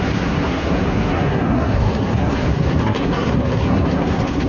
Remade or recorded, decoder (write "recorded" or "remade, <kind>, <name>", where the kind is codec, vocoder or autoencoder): remade, codec, SNAC